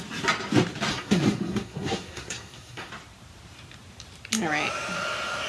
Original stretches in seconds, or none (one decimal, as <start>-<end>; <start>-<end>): 0.0-0.9; 2.9-5.5